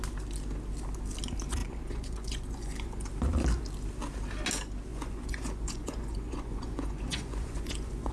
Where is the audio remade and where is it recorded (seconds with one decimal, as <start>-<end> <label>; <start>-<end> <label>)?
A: 0.0-1.6 recorded; 1.6-3.1 remade; 3.1-4.9 recorded; 4.9-8.1 remade